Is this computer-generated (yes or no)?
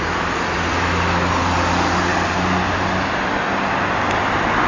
no